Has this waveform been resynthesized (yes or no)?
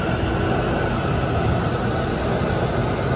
no